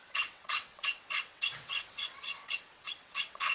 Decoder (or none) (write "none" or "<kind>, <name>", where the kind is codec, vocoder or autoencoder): vocoder, WaveNeXt